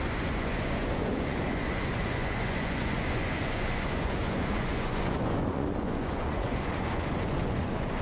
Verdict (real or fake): fake